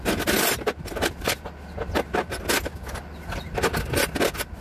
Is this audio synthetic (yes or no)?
no